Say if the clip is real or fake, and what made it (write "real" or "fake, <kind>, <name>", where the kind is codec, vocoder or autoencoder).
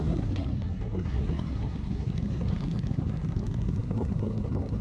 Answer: fake, codec, SNAC